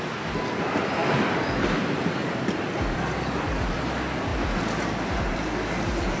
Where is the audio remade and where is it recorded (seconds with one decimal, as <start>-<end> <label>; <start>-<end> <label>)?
0.0-6.2 recorded